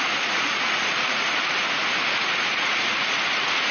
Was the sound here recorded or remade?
remade